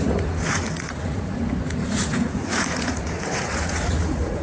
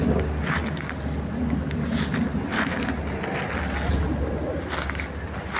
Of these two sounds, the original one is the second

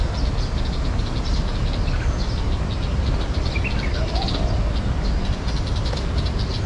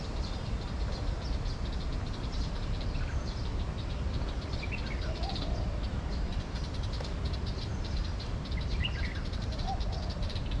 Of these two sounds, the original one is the first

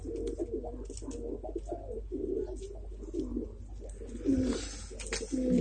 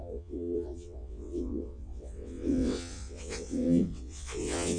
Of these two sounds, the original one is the first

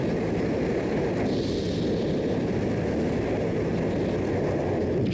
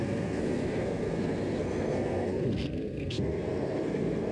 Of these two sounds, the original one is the first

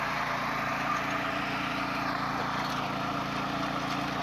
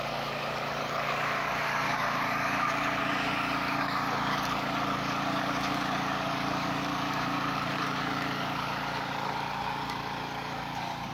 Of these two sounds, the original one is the first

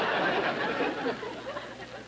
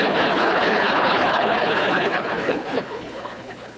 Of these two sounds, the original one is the first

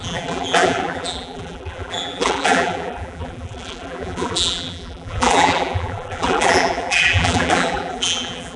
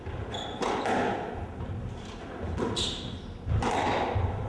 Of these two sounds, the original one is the second